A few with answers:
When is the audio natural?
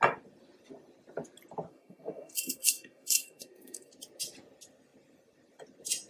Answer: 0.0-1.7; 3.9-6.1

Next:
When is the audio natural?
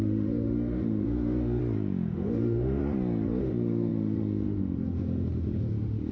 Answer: 1.6-2.1; 2.8-3.4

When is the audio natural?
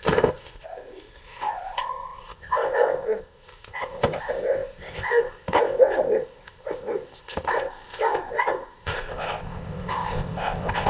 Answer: none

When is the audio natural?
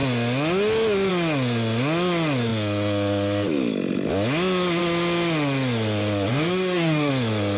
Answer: 0.0-6.3; 7.1-7.6